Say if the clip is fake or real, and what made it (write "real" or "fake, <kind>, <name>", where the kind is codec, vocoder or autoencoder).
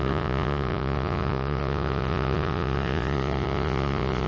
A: fake, vocoder, Vocos